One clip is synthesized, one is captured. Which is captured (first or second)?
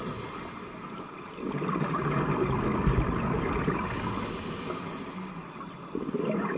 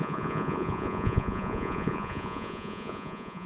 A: first